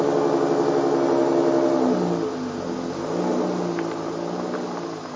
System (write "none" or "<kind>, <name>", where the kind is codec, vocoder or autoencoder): none